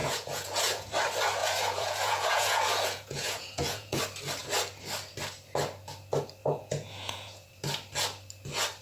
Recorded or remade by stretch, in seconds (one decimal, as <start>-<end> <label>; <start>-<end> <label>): 0.0-0.9 remade; 0.9-1.4 recorded; 1.4-4.0 remade; 4.0-6.4 recorded; 6.4-7.5 remade; 7.5-8.8 recorded